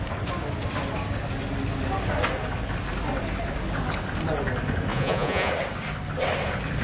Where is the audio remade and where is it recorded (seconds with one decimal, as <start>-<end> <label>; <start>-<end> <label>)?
0.0-4.9 recorded; 4.9-5.5 remade; 5.5-6.8 recorded